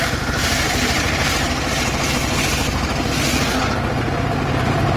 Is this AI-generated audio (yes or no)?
yes